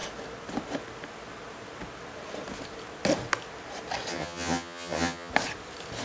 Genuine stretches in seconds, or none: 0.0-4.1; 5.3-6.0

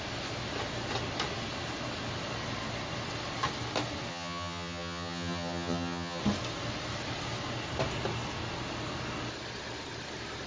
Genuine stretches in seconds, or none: 0.0-4.1; 6.2-10.5

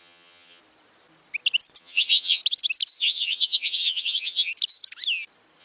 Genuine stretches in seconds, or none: 0.6-1.8; 2.4-3.0; 4.5-5.6

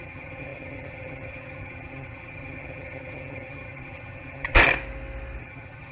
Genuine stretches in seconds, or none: 4.6-5.4

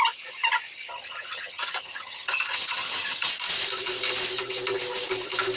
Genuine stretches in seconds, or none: 0.0-0.9; 3.3-5.6

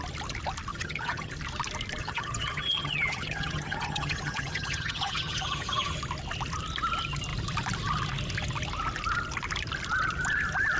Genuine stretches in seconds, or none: 0.0-0.7; 1.3-2.0; 6.0-10.8